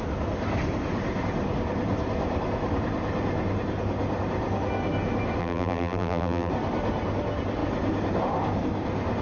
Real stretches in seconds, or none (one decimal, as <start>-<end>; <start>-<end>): 0.0-5.4; 6.5-9.2